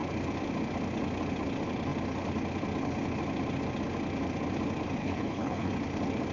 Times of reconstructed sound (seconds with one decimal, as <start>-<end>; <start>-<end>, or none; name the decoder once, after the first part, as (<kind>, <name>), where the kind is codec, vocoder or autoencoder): 5.0-5.7 (codec, HILCodec)